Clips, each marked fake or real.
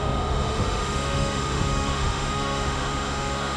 fake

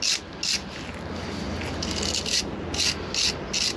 real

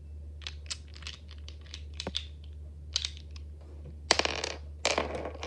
real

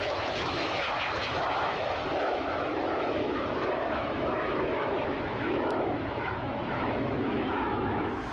fake